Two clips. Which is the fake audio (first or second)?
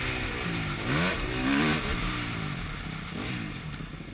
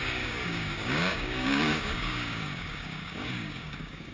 second